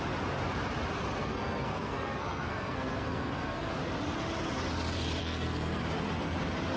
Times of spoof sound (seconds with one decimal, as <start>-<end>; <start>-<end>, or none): 1.2-3.7; 5.2-5.8

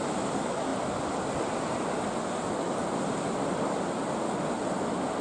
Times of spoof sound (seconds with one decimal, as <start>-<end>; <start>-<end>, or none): none